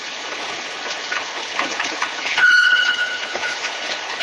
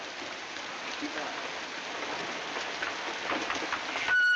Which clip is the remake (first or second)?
first